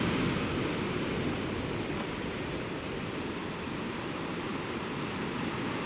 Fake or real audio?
real